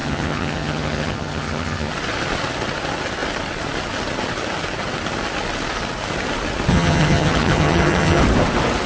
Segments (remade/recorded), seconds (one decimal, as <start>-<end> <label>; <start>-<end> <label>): 0.0-1.9 remade; 1.9-6.7 recorded; 6.7-8.2 remade; 8.2-8.9 recorded